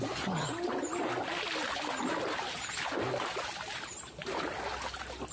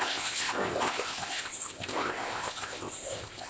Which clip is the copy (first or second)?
second